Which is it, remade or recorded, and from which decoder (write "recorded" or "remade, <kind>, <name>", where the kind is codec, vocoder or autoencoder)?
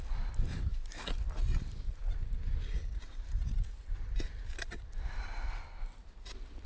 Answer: recorded